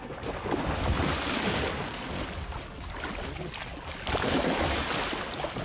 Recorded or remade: recorded